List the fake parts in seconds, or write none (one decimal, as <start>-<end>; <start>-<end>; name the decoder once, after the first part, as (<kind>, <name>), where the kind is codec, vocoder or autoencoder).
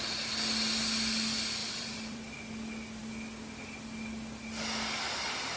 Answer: 1.6-2.4 (vocoder, BigVGAN v2)